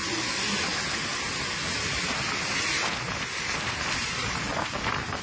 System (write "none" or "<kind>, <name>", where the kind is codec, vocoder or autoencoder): none